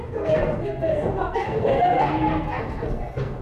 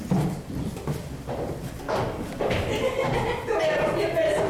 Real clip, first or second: second